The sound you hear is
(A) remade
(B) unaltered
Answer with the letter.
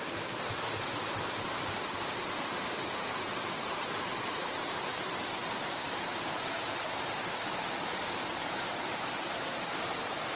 A